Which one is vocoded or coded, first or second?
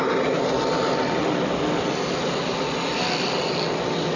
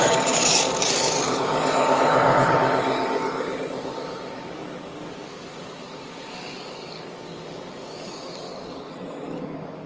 second